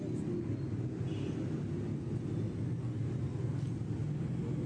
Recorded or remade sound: recorded